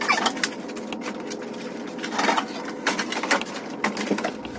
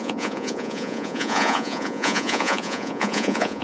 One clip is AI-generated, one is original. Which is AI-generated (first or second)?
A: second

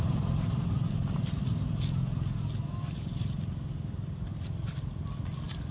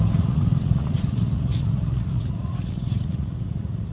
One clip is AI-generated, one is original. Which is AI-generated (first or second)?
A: second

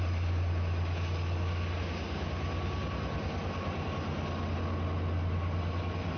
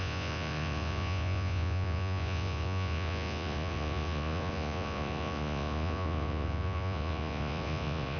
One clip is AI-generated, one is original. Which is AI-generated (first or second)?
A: second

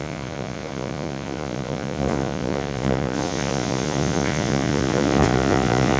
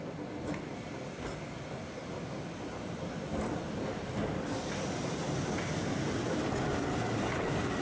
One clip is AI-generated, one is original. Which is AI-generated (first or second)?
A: first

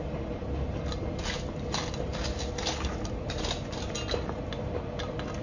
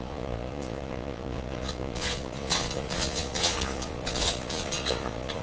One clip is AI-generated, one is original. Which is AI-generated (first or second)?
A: second